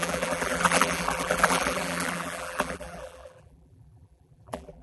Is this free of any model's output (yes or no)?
no